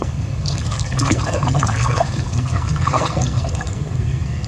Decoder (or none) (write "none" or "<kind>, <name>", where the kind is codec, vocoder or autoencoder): codec, SNAC